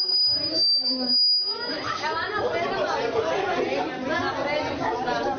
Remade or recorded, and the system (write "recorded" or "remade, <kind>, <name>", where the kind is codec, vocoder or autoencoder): recorded